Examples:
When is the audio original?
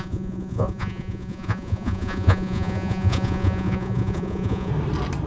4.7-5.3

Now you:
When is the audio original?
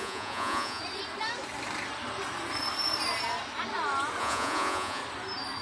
0.8-4.2; 5.0-5.6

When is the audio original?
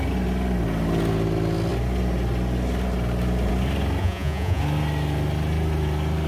0.0-4.0; 4.6-6.3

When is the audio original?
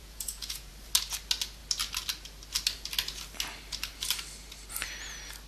0.7-5.5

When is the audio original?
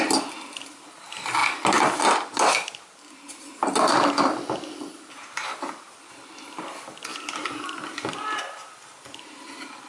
0.0-9.9